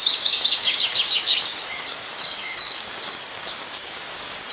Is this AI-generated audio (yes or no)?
yes